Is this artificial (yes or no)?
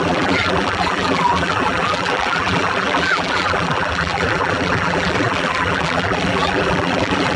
yes